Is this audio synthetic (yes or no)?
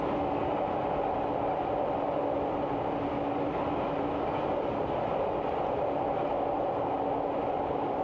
no